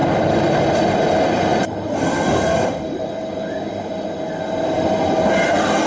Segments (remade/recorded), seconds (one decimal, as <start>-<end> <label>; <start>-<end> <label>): 0.0-0.6 remade; 0.6-1.5 recorded; 1.5-5.0 remade; 5.0-5.9 recorded